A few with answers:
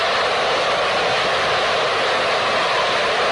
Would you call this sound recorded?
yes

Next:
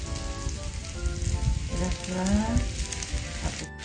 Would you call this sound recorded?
yes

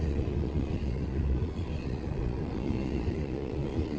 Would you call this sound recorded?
no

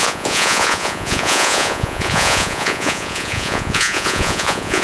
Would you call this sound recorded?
no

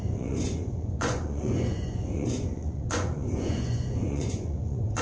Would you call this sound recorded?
no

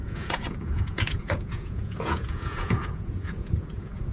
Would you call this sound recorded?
no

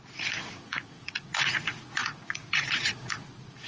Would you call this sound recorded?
no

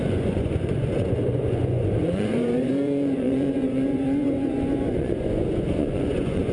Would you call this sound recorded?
no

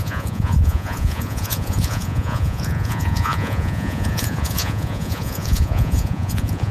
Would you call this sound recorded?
no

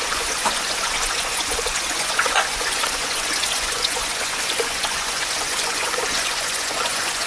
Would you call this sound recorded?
no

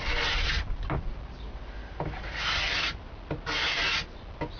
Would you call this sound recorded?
yes